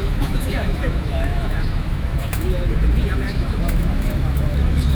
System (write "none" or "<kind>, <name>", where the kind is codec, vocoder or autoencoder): autoencoder, DAC-VAE